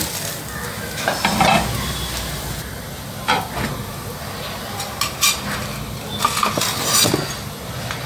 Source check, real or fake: real